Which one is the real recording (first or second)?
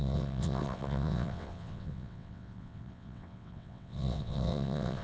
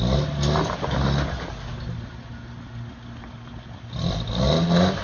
second